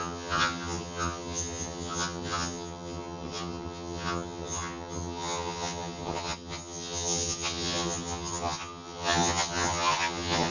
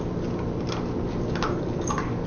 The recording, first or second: second